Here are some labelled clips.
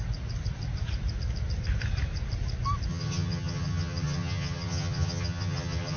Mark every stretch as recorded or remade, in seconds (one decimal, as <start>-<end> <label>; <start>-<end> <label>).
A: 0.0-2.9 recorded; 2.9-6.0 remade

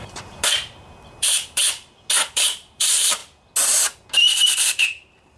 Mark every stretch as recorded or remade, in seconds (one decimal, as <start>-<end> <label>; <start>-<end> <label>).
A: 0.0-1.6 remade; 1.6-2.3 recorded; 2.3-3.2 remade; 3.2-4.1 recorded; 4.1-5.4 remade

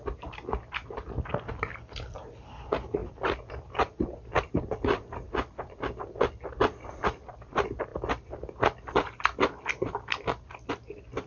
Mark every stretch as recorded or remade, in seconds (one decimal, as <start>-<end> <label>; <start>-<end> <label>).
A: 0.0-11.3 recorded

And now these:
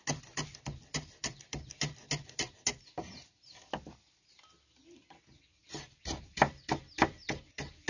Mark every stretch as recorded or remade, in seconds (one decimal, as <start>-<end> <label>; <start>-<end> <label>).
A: 0.0-7.9 recorded

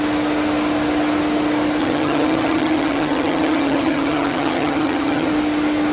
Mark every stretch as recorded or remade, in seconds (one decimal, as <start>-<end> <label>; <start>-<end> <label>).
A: 0.0-1.8 recorded; 1.8-5.3 remade; 5.3-5.9 recorded